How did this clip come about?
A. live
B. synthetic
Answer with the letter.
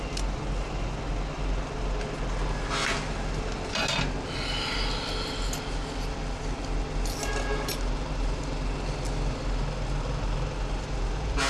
A